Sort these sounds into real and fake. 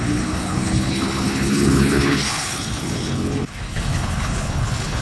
fake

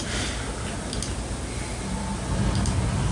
real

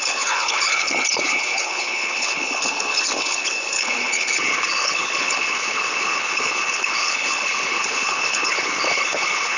fake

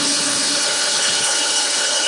fake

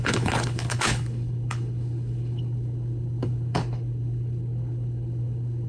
fake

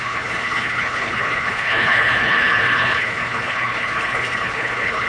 fake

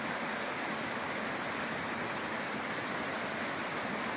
real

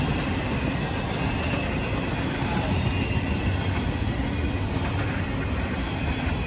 real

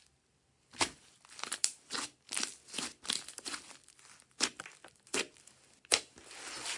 real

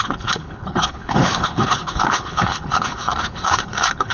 fake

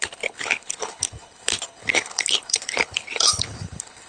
fake